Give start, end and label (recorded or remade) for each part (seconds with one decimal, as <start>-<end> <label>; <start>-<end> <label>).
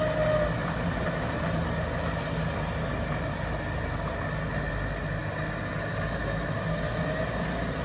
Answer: 0.0-7.8 recorded